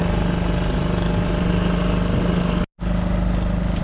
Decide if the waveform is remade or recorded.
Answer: recorded